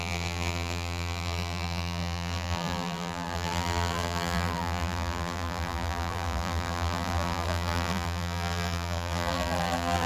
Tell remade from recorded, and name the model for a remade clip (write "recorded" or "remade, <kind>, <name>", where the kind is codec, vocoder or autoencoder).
remade, vocoder, BigVGAN v2